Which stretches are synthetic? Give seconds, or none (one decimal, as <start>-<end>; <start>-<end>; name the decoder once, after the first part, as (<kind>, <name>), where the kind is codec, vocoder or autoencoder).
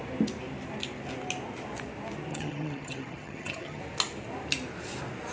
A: 2.3-3.8 (vocoder, HiFi-GAN)